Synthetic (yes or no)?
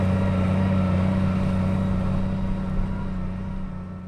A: no